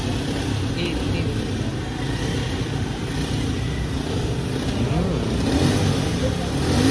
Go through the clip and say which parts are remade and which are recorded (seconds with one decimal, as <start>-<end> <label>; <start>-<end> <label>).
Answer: 0.0-6.9 recorded